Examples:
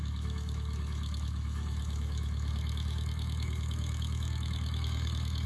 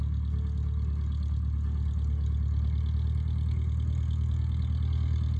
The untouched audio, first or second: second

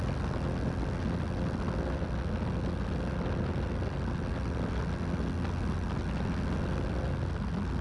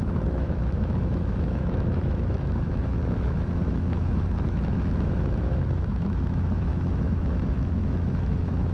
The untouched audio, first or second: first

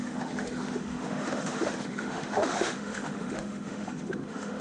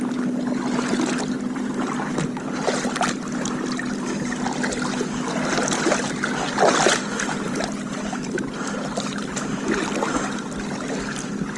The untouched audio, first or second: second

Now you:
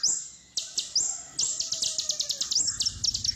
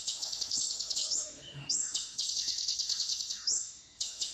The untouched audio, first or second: first